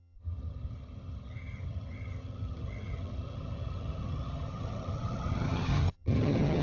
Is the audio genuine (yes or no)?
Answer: no